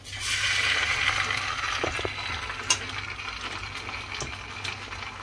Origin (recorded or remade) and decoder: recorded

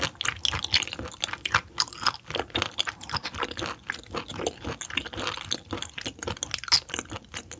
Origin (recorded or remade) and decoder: recorded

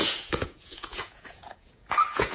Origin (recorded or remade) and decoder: remade, vocoder, Vocos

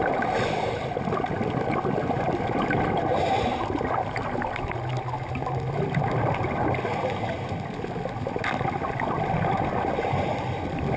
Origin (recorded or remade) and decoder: recorded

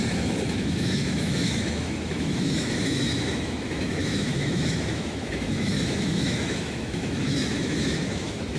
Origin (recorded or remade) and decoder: remade, autoencoder, DAC-VAE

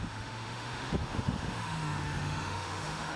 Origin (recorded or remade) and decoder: remade, autoencoder, DAC-VAE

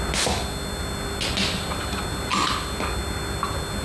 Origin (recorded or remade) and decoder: recorded